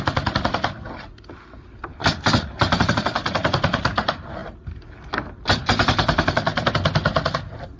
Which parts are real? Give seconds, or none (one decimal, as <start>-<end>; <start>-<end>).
0.0-7.8